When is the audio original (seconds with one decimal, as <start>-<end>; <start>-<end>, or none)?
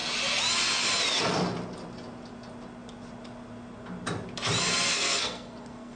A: 0.0-4.7